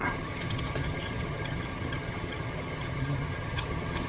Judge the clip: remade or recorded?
remade